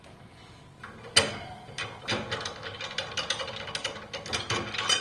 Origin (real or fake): real